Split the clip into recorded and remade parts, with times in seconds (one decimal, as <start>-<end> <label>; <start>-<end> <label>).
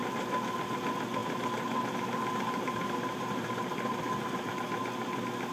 0.0-1.2 recorded; 1.2-4.5 remade; 4.5-5.5 recorded